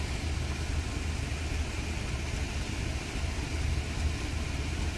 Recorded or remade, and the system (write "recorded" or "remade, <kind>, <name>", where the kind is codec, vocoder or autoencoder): recorded